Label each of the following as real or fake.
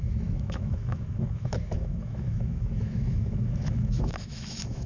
fake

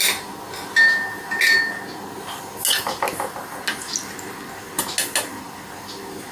real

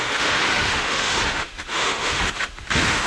fake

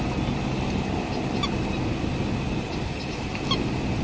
real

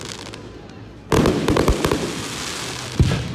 real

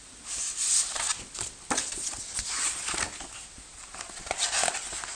real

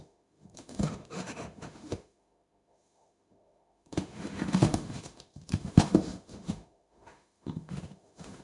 fake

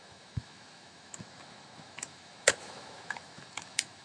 fake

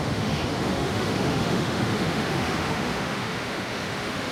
fake